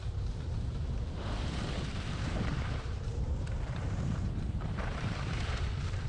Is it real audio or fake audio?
fake